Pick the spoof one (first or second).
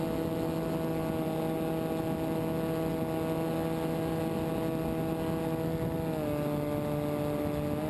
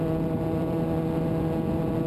second